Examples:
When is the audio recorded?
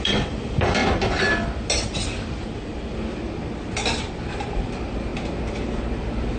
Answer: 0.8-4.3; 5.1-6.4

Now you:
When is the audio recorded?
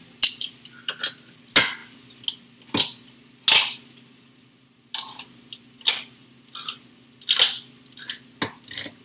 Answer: 0.0-9.0